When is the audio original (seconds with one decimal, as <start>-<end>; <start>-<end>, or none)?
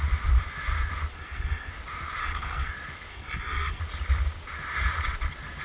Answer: 0.0-1.1; 1.7-2.2; 2.7-3.1; 3.8-5.6